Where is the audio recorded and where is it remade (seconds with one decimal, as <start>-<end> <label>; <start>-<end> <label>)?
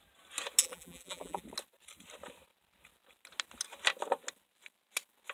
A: 0.0-0.6 recorded; 0.6-1.4 remade; 1.4-5.3 recorded